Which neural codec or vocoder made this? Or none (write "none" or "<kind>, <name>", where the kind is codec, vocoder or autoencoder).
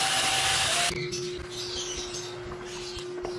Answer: none